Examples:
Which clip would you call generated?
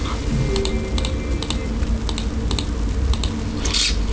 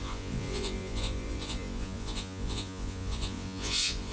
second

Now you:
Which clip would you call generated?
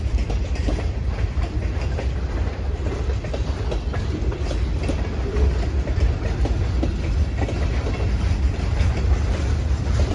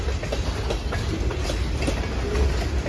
first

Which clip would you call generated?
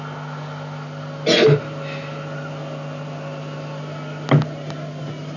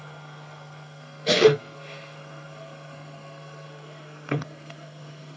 second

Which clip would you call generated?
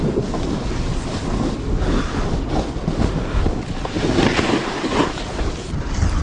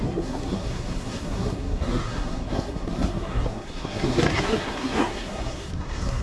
second